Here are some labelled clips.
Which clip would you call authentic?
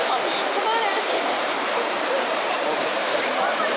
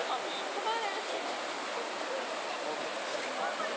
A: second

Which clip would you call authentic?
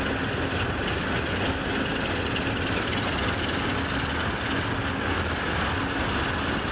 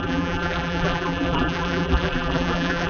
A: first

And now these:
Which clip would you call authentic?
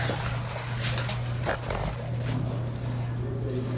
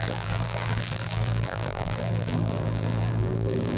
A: first